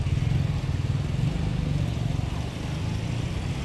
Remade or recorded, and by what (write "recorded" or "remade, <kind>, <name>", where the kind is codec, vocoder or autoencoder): recorded